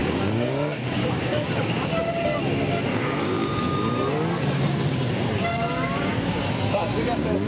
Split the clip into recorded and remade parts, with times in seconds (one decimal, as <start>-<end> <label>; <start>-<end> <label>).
0.0-2.4 remade; 2.4-2.9 recorded; 2.9-3.9 remade; 3.9-5.5 recorded; 5.5-6.8 remade; 6.8-7.5 recorded

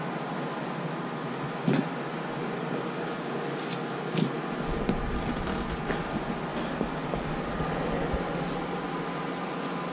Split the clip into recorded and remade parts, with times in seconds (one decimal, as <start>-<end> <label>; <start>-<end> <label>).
0.0-6.5 recorded; 6.5-7.3 remade; 7.3-9.9 recorded

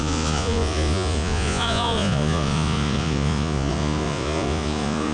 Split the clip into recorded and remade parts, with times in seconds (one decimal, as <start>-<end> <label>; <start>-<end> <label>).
0.0-5.1 remade

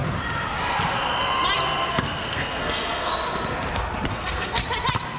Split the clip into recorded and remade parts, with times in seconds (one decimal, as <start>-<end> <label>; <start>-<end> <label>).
0.0-1.9 recorded; 1.9-3.1 remade; 3.1-4.1 recorded; 4.1-4.6 remade; 4.6-5.2 recorded

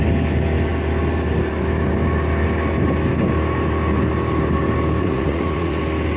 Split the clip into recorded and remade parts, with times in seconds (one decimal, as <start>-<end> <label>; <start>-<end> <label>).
0.0-5.0 recorded; 5.0-5.8 remade; 5.8-6.2 recorded